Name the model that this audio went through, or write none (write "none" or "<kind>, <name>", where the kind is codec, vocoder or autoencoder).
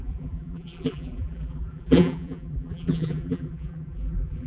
vocoder, BigVGAN v2